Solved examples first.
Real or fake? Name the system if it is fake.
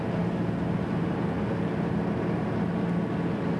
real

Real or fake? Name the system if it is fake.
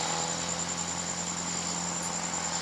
real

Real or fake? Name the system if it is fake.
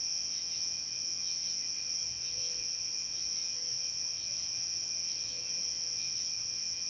fake, vocoder, WaveNeXt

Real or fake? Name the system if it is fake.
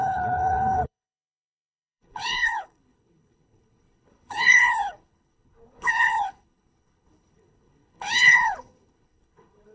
fake, codec, HILCodec